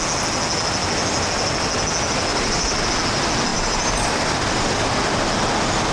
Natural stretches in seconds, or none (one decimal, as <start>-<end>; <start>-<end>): 0.0-2.3; 2.9-3.5; 4.9-5.9